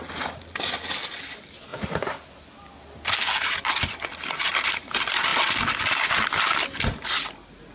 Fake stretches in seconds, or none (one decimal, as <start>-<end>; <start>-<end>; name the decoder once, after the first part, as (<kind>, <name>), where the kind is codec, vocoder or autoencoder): none